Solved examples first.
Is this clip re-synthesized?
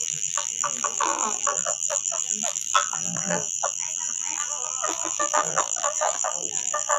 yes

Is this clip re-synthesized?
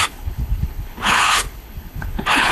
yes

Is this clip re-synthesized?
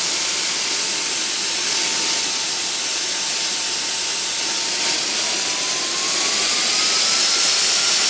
no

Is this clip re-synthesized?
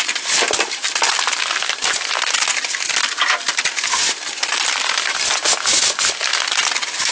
no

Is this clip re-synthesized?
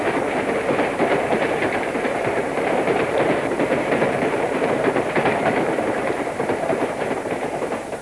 yes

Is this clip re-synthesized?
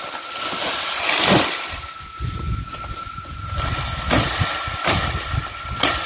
no